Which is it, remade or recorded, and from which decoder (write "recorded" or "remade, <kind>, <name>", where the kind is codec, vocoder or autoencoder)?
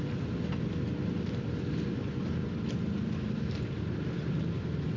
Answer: recorded